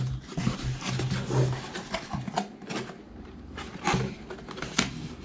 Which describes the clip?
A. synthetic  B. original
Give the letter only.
B